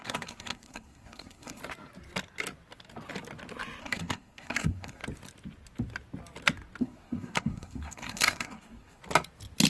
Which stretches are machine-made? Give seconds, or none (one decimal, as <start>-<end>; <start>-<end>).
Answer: 0.0-1.6; 3.8-5.0; 6.8-9.0